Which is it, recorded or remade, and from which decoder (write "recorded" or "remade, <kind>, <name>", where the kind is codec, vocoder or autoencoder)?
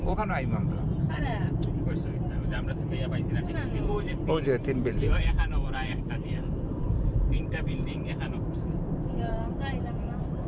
remade, vocoder, BigVGAN v2